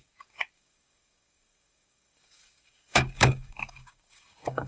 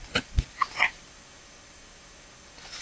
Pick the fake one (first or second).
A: first